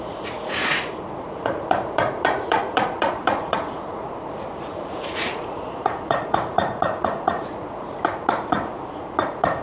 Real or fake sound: fake